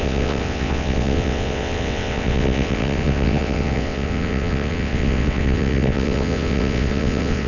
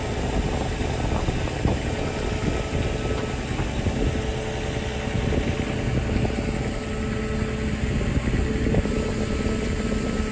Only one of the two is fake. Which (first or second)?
first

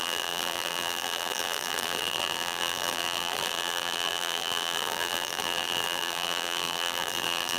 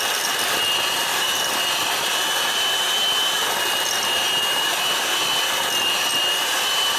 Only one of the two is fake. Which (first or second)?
first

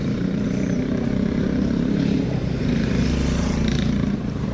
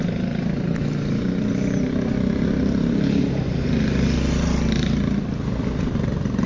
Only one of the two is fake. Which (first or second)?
first